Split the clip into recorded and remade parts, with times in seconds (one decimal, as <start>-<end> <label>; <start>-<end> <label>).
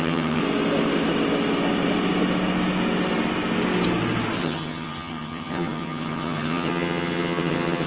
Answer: 0.0-0.4 remade; 0.4-4.4 recorded; 4.4-7.9 remade